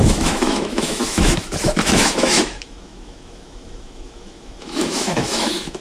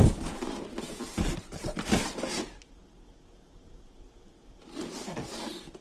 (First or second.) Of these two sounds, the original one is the second